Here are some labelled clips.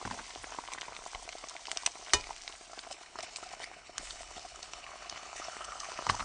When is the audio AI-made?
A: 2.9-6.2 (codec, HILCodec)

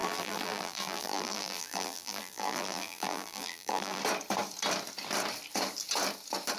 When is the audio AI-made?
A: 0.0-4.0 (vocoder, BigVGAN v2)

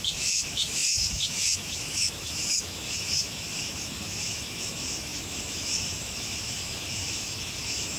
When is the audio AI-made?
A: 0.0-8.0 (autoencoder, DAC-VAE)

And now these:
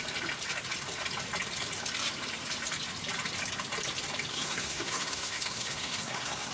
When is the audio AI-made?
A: 4.3-6.5 (codec, SNAC)

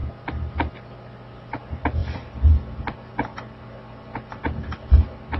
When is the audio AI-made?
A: none

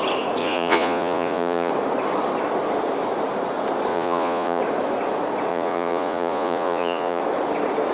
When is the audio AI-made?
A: 0.4-1.7 (vocoder, Vocos); 3.9-4.6; 5.5-7.2

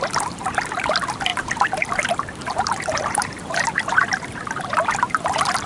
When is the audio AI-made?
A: 1.3-4.7 (vocoder, BigVGAN v2)

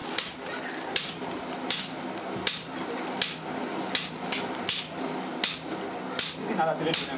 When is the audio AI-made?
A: 0.0-1.4 (vocoder, BigVGAN v2)